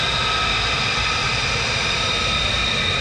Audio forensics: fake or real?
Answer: real